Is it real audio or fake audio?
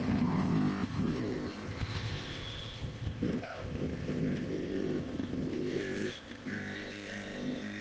fake